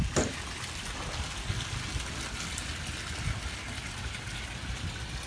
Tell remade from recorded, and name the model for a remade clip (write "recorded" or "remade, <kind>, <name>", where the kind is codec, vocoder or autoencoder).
recorded